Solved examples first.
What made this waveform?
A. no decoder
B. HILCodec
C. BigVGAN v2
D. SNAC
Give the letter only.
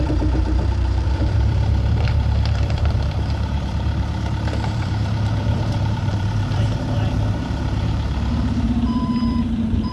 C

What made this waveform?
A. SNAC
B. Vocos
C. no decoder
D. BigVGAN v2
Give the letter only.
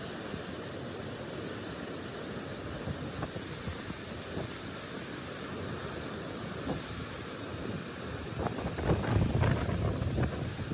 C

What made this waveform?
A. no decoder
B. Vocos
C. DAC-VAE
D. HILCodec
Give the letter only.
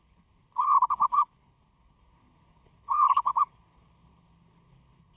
D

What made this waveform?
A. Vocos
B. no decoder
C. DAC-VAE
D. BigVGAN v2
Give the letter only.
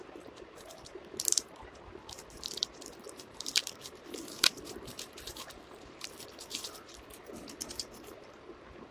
D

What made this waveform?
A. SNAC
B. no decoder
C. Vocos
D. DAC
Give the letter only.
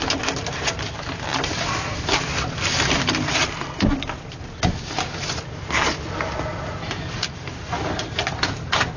B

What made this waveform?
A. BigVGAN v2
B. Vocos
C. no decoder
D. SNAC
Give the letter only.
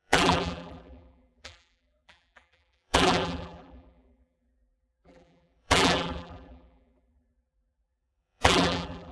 A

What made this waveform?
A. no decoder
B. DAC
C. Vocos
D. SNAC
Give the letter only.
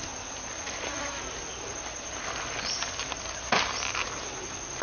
A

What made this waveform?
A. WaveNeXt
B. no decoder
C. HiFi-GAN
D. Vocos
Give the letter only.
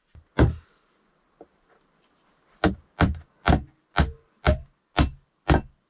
B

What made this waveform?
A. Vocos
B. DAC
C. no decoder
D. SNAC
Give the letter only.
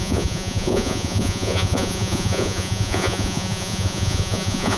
A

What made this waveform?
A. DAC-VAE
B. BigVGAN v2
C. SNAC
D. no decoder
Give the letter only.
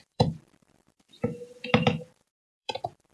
B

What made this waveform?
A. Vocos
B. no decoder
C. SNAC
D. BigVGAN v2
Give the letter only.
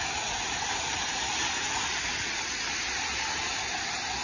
B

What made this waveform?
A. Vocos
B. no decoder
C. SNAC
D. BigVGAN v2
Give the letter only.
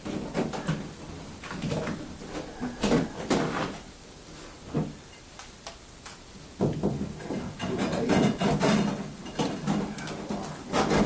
B